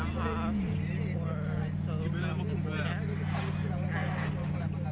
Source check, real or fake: real